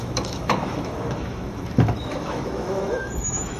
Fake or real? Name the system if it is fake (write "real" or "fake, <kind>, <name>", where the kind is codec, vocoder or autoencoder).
fake, autoencoder, DAC-VAE